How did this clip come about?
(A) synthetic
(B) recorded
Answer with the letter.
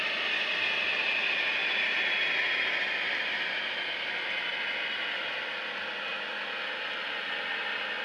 B